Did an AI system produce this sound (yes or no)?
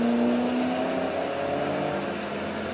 no